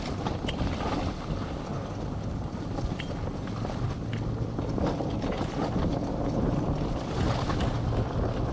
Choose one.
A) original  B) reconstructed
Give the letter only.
A